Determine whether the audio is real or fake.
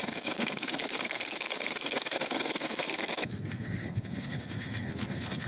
fake